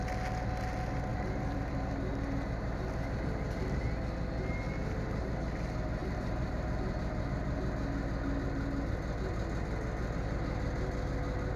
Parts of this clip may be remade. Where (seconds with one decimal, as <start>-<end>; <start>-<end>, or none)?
1.1-2.1; 6.0-7.2